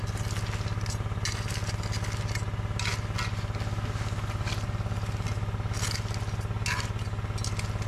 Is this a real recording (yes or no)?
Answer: yes